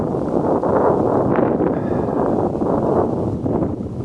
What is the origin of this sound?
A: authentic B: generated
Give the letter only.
A